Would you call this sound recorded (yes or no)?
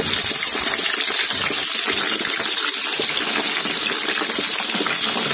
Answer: yes